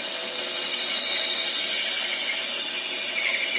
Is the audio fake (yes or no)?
no